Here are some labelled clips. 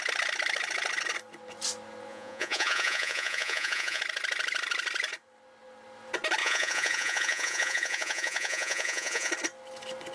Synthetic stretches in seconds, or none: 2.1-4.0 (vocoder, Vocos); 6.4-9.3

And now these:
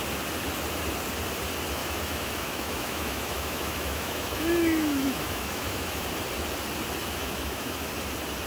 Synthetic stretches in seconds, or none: 1.8-6.1 (autoencoder, DAC-VAE); 7.0-7.9

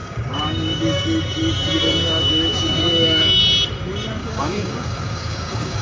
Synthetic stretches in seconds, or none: 0.0-3.4 (codec, DAC); 4.2-5.8

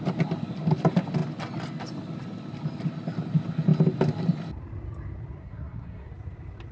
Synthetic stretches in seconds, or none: 5.4-6.1 (codec, SNAC)

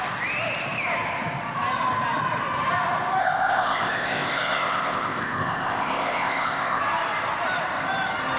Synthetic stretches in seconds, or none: 3.2-6.8 (codec, ZipCodec)

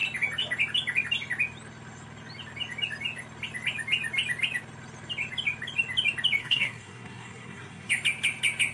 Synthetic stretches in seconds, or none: 6.4-7.9 (codec, SNAC)